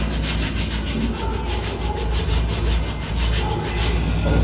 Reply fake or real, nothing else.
real